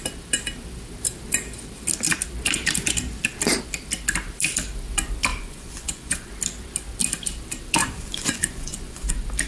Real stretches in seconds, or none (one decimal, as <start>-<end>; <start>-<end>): 0.0-5.3; 6.3-7.8; 9.1-9.5